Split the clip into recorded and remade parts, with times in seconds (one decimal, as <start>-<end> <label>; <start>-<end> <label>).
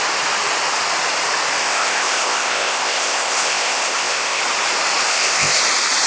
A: 0.0-1.6 recorded; 1.6-4.4 remade; 4.4-5.1 recorded; 5.1-5.6 remade; 5.6-6.1 recorded